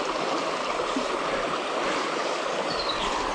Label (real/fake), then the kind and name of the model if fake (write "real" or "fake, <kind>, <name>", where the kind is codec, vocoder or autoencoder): real